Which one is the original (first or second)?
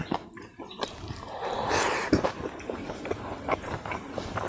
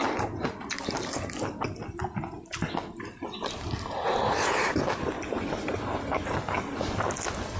second